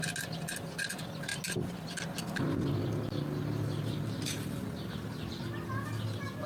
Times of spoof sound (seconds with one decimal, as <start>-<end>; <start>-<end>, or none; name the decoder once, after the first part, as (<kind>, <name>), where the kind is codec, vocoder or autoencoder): none

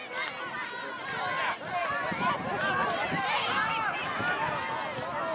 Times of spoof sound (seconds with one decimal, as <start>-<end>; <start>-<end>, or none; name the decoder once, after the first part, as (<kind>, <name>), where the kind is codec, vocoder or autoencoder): 1.8-3.2 (vocoder, BigVGAN v2)

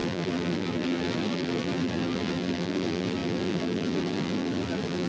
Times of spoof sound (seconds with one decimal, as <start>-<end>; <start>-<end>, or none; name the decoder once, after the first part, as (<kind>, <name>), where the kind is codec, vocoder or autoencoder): 0.0-5.1 (vocoder, BigVGAN v2)

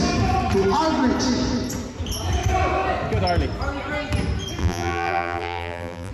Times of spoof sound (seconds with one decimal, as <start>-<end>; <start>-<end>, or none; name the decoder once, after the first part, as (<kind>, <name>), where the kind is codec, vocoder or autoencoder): 4.6-6.1 (vocoder, BigVGAN v2)